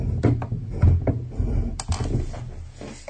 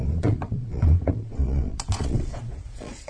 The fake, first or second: second